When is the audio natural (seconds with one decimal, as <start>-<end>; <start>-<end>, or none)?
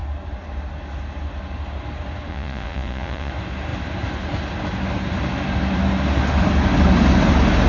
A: 0.0-2.3; 3.3-7.7